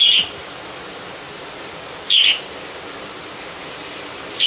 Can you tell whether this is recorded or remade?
recorded